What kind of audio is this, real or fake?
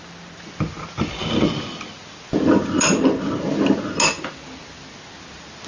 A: real